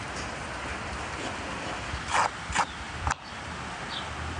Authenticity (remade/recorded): recorded